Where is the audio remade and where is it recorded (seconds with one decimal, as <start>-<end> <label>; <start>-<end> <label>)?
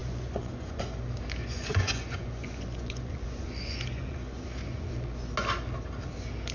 0.0-0.8 remade; 0.8-1.4 recorded; 1.4-5.3 remade; 5.3-6.5 recorded